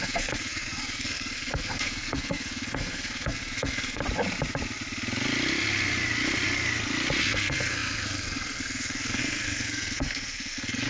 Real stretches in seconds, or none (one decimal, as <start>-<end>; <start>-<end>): 4.0-7.2

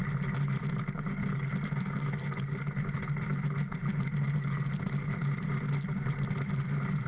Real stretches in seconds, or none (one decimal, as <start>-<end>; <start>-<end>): 0.0-7.1

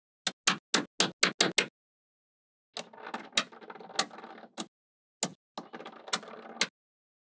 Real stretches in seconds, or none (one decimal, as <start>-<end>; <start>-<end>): 0.0-7.3

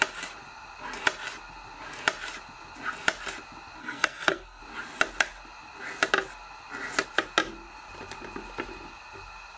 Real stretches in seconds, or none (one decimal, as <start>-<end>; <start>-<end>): 0.0-3.8; 4.6-9.6

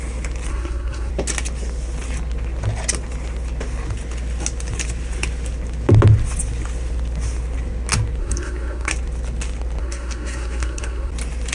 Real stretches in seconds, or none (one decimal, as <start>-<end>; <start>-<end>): 0.0-0.5; 1.1-8.2; 8.9-9.8; 11.1-11.5

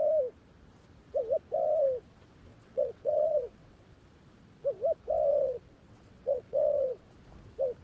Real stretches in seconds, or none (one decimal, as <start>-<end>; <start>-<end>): 0.0-2.5; 4.0-5.3; 7.1-7.8